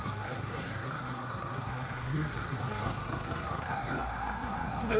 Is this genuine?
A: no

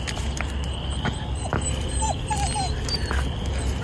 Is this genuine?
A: yes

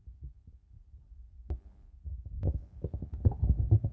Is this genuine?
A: yes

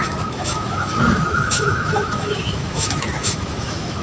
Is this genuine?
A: no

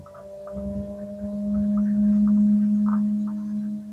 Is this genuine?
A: yes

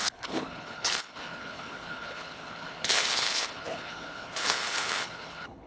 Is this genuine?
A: no